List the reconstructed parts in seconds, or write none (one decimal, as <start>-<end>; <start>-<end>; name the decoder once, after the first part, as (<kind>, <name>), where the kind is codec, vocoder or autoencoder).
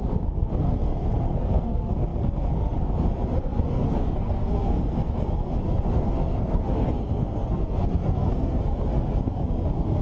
0.0-10.0 (codec, SNAC)